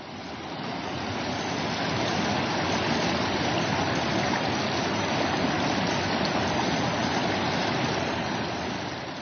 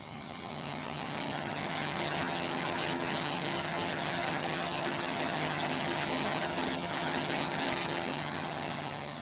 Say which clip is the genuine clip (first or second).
first